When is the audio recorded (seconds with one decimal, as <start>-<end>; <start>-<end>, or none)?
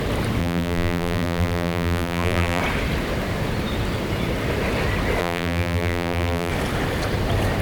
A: 0.0-0.4; 2.6-5.2; 6.5-7.6